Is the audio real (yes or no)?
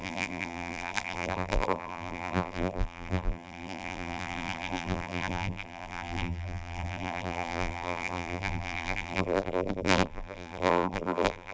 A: no